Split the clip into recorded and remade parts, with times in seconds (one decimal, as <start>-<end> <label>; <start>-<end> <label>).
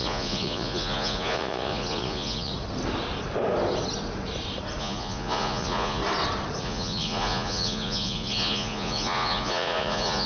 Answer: 0.0-2.5 remade; 2.5-4.8 recorded; 4.8-6.0 remade; 6.0-6.6 recorded; 6.6-10.3 remade